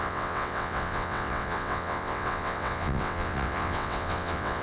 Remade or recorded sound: remade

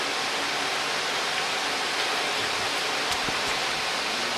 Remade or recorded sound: recorded